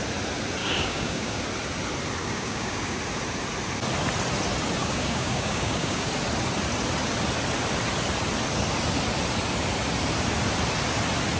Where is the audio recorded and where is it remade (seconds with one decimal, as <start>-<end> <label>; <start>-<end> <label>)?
0.0-0.6 recorded; 0.6-1.4 remade; 1.4-2.2 recorded; 2.2-3.0 remade; 3.0-4.8 recorded; 4.8-6.1 remade; 6.1-11.4 recorded